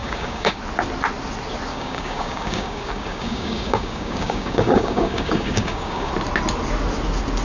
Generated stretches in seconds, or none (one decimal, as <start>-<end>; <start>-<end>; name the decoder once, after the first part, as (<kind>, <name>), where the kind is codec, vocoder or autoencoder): 0.0-0.6 (codec, DAC); 1.7-6.1